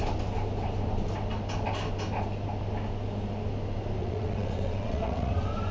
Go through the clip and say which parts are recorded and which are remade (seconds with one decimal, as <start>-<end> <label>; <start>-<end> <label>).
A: 0.0-4.0 recorded; 4.0-5.3 remade; 5.3-5.7 recorded